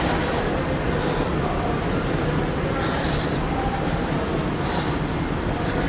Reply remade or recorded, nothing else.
recorded